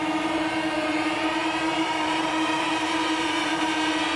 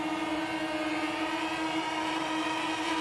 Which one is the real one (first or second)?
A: second